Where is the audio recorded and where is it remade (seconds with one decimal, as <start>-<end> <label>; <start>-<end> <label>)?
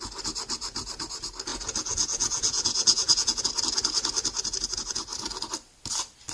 0.0-1.5 recorded; 1.5-3.4 remade; 3.4-6.3 recorded